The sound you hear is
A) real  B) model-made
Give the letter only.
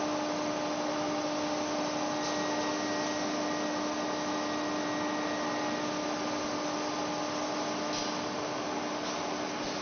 A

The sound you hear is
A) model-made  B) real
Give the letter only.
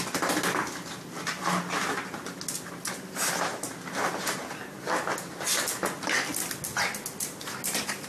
B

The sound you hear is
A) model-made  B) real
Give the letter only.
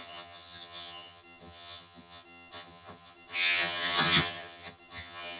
A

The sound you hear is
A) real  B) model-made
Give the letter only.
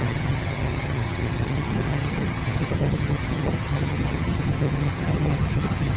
B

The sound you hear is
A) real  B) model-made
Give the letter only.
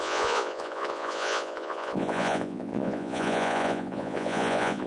B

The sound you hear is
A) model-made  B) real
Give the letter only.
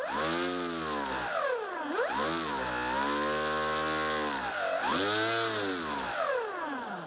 B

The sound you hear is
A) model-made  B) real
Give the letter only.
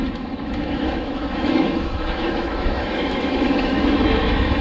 A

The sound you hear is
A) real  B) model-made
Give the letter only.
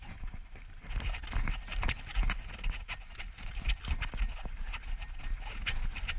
A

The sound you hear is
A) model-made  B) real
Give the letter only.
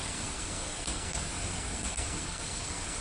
A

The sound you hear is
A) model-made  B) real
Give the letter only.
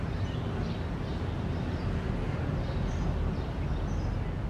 B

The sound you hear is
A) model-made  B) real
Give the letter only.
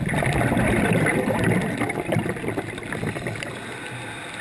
B